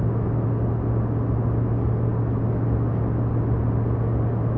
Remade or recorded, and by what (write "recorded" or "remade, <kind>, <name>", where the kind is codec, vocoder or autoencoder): recorded